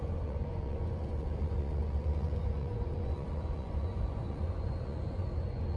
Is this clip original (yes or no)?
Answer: no